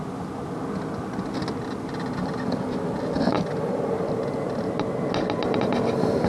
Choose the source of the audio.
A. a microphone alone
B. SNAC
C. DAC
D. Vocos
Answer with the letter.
A